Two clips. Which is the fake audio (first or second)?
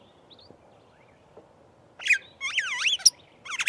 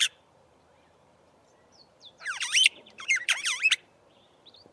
second